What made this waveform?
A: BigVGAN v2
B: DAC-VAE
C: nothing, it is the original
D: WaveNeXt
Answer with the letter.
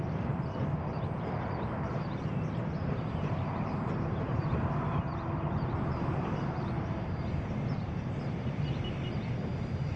A